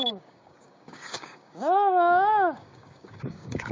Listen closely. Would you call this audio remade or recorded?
remade